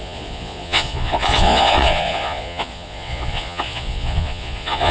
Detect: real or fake fake